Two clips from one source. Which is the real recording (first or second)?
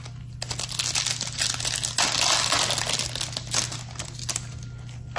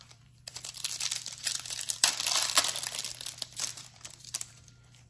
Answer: first